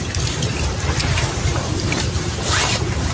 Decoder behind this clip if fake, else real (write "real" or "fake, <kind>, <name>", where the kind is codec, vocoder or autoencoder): fake, vocoder, BigVGAN v2